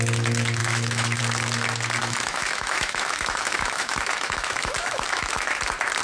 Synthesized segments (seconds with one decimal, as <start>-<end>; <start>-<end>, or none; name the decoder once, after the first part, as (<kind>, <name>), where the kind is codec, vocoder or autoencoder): 0.6-1.2 (autoencoder, DAC-VAE); 2.0-5.6